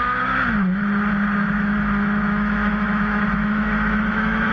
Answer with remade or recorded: remade